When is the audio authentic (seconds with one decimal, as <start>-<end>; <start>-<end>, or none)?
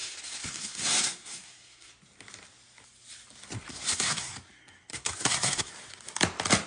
1.9-3.7; 4.3-4.9; 5.7-6.7